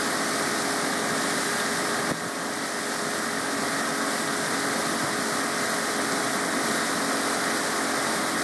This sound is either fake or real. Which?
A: real